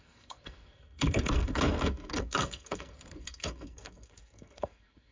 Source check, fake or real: fake